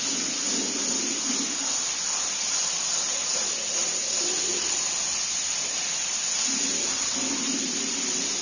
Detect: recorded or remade recorded